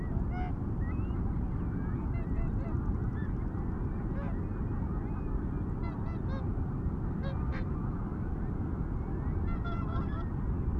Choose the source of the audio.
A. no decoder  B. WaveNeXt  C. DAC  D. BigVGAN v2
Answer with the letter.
A